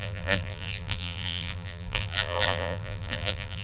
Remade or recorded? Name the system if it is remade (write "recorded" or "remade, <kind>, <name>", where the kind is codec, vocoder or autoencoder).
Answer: remade, vocoder, BigVGAN v2